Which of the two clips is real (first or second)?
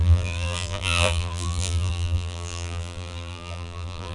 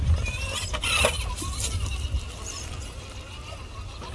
second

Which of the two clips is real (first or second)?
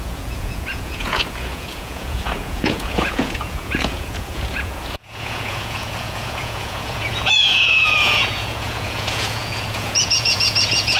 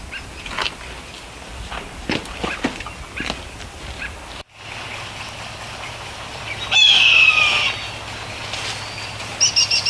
second